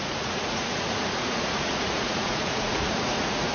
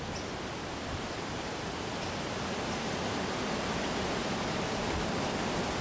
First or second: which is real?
second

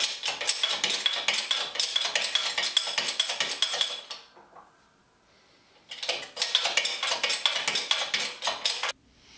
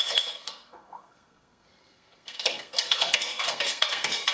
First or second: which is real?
first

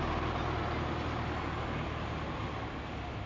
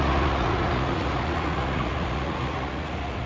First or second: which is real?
first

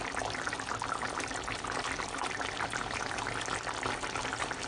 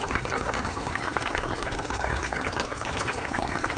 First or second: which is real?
first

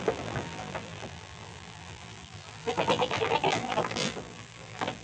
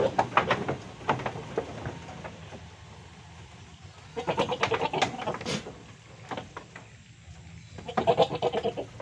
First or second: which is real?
second